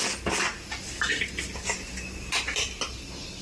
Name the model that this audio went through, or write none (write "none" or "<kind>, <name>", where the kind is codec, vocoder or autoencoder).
none